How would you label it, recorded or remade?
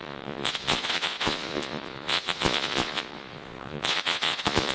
remade